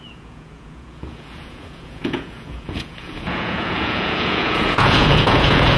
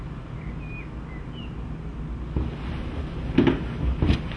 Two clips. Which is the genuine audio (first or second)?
second